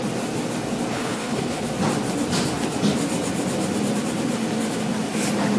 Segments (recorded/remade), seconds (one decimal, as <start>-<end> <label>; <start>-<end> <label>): 0.0-0.9 recorded; 0.9-1.7 remade; 1.7-5.6 recorded